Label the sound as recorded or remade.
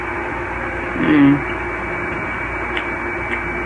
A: recorded